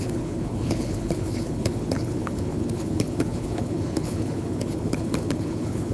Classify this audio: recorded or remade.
remade